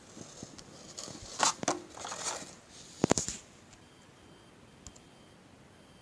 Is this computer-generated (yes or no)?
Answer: no